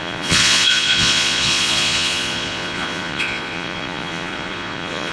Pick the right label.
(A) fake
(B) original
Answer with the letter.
A